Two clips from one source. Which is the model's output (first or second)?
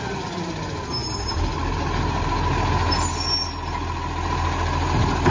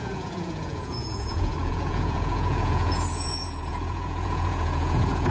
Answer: second